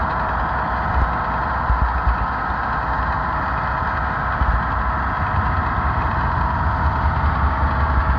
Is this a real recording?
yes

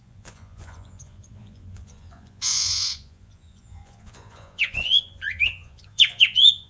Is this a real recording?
no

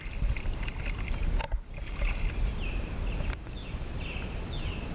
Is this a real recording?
yes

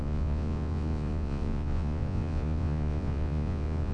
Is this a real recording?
no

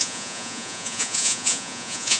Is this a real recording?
no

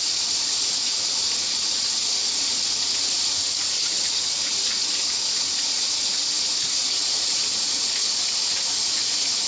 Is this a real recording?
no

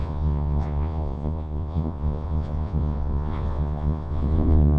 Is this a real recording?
no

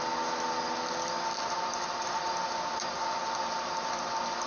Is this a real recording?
yes